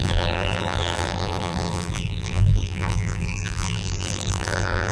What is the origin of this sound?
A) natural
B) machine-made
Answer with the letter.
B